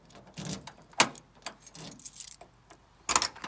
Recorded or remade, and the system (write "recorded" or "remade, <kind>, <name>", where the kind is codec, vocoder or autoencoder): recorded